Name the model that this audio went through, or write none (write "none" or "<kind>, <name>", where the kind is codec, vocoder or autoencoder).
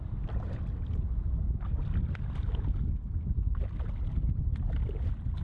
none